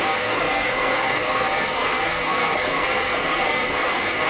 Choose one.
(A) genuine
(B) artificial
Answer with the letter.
B